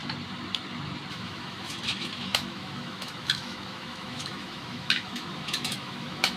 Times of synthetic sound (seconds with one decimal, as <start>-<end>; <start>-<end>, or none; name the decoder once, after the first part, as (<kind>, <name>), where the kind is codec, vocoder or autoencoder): 1.1-6.4 (autoencoder, DAC-VAE)